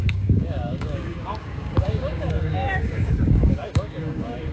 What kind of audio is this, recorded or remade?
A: remade